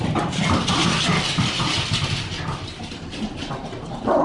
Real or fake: fake